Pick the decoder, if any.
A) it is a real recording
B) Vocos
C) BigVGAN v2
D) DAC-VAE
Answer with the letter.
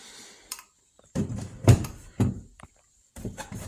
C